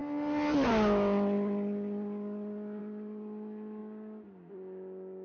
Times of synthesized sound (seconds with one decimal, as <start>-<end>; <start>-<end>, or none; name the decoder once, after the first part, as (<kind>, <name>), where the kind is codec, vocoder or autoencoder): none